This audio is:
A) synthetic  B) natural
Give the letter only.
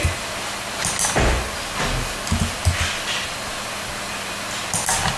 B